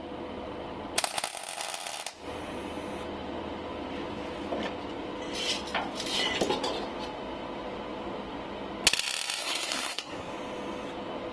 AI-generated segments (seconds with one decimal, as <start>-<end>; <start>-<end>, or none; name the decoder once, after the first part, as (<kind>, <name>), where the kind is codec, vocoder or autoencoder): 9.4-10.3 (codec, SNAC)

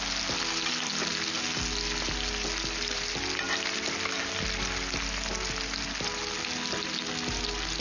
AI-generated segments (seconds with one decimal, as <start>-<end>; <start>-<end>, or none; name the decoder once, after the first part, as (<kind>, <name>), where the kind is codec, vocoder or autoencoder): none

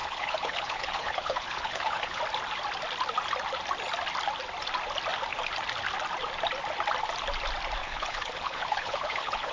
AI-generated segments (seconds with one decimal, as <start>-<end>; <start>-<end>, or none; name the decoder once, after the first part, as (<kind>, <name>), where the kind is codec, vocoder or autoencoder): 0.0-2.2 (codec, HILCodec); 7.8-9.5